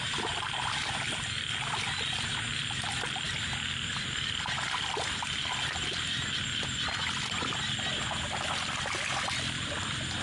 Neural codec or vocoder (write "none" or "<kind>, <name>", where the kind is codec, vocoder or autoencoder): none